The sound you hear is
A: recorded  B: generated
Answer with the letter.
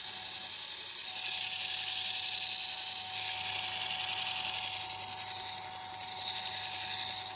A